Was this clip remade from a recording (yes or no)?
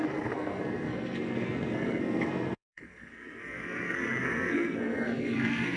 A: yes